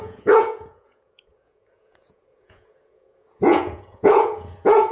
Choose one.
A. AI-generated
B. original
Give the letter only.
A